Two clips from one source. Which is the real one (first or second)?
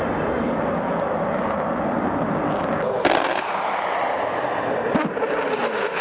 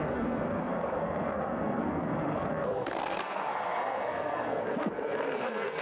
first